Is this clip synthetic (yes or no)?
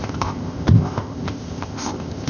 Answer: yes